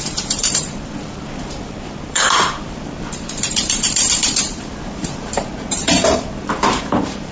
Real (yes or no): no